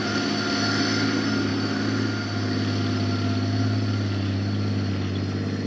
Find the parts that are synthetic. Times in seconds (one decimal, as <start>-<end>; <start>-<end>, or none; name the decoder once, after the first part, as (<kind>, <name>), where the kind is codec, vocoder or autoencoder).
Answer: none